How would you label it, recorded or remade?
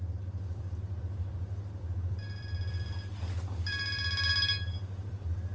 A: remade